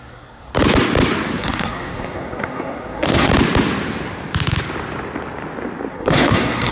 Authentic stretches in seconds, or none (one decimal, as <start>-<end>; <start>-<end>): 0.5-1.4; 3.3-5.9

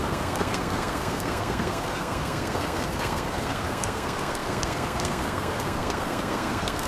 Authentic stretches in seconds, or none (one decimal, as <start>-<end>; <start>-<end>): none